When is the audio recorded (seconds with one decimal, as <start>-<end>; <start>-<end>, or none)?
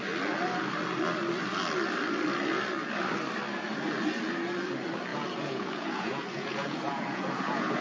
0.0-5.1